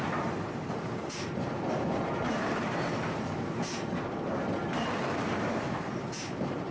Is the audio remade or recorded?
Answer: remade